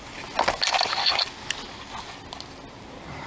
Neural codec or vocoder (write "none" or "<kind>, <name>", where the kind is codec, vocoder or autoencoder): none